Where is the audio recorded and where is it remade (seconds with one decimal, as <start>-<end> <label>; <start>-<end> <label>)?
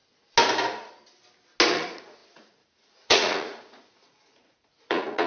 0.0-1.7 recorded; 1.7-5.3 remade